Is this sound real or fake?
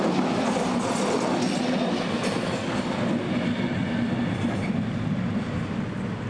real